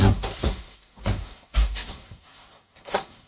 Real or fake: fake